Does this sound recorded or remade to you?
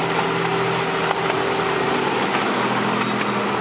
recorded